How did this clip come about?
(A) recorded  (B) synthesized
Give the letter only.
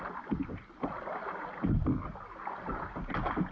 A